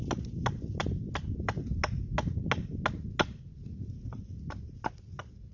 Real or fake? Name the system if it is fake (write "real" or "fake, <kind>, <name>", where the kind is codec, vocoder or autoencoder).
real